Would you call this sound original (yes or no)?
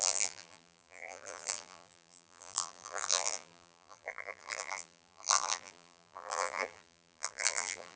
no